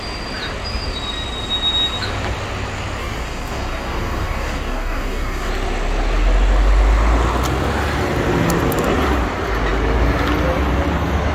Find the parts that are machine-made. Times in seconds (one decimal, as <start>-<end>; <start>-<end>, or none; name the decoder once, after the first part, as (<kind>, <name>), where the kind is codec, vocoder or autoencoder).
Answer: 3.0-5.5 (codec, DAC)